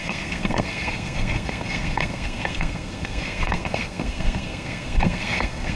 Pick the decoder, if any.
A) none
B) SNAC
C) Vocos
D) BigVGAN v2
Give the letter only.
B